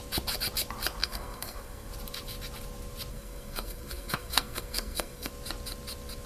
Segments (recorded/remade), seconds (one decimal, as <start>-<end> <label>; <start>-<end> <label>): 0.0-1.0 recorded; 1.0-1.9 remade; 1.9-3.1 recorded; 3.1-5.3 remade; 5.3-6.3 recorded